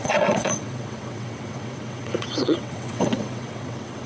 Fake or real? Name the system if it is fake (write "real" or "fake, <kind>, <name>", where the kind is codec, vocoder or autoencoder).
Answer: fake, vocoder, WaveNeXt